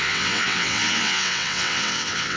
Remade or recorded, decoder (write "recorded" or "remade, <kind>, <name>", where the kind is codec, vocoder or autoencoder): remade, vocoder, WaveNeXt